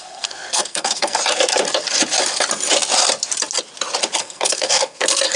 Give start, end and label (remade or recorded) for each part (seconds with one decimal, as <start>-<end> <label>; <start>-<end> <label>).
0.0-1.2 remade; 1.2-4.2 recorded; 4.2-5.4 remade